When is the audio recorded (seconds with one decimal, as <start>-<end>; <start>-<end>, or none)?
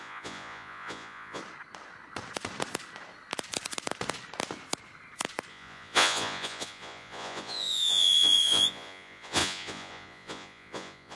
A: 1.4-5.5